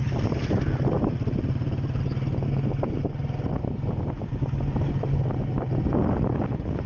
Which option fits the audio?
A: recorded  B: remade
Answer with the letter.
A